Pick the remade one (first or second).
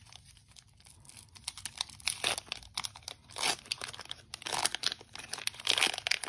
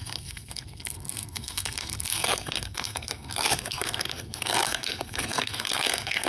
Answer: second